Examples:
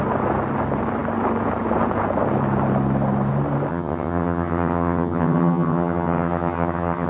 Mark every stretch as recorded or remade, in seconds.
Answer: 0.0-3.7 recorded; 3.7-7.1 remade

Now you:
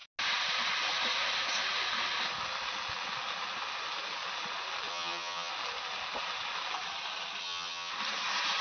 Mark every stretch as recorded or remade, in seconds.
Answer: 0.0-4.9 recorded; 4.9-5.5 remade; 5.5-7.4 recorded; 7.4-7.9 remade; 7.9-8.6 recorded

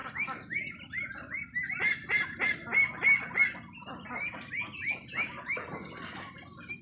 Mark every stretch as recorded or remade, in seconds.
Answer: 0.0-6.8 recorded

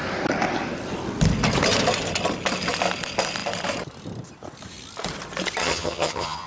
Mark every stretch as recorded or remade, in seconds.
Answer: 0.0-5.6 recorded; 5.6-6.5 remade

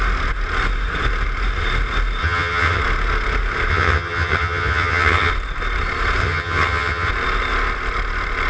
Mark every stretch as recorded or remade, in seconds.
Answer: 0.0-2.2 recorded; 2.2-2.8 remade; 2.8-3.7 recorded; 3.7-5.3 remade; 5.3-6.2 recorded; 6.2-7.1 remade; 7.1-8.5 recorded

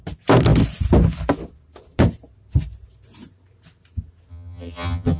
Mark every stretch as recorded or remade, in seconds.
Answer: 0.0-4.3 recorded; 4.3-5.2 remade

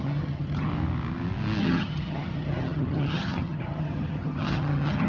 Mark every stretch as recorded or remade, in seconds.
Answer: 0.0-0.7 remade; 0.7-1.6 recorded; 1.6-5.1 remade

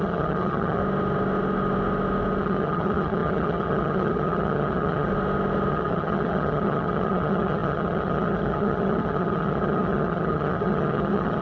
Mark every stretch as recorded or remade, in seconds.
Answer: 0.0-0.8 remade; 0.8-2.4 recorded; 2.4-5.1 remade; 5.1-5.7 recorded; 5.7-11.4 remade